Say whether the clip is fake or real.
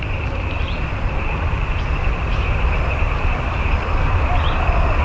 fake